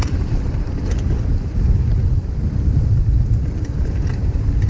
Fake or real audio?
fake